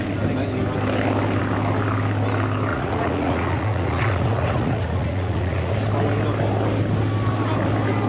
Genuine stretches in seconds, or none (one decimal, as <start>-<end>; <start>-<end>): 0.0-2.7; 5.7-8.1